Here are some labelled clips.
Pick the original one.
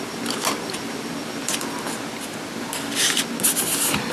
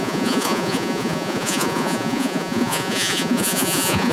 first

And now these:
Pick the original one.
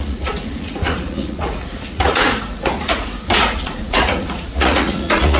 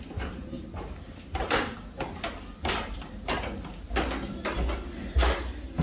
second